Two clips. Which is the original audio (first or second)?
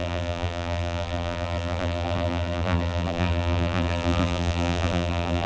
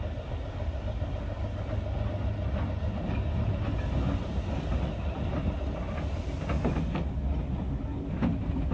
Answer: second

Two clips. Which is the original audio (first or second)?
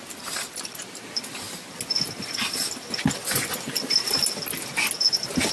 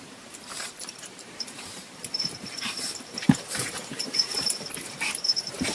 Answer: first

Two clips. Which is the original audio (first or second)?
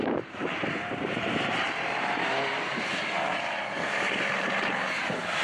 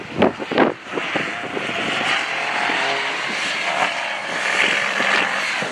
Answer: second